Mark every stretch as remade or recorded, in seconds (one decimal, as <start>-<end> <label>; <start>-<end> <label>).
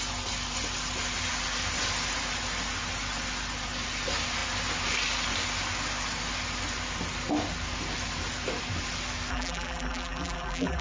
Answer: 0.0-9.3 recorded; 9.3-10.8 remade